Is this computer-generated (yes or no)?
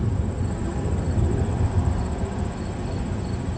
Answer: no